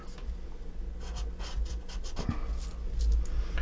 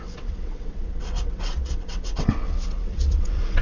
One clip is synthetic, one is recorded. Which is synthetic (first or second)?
second